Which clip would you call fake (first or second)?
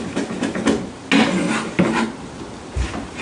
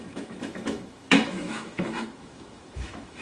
second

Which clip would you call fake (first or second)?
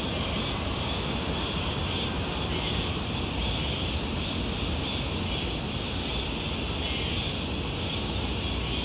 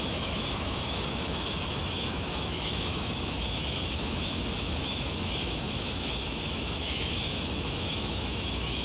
second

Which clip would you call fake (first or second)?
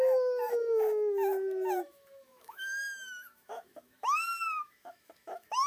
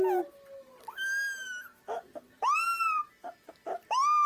first